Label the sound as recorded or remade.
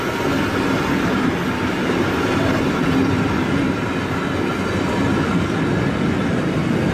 recorded